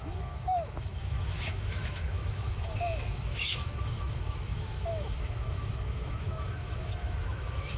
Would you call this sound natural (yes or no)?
no